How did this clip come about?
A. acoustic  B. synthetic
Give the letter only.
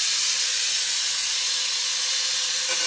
B